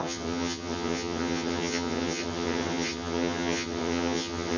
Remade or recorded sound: remade